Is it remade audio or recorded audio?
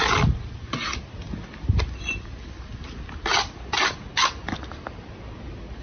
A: recorded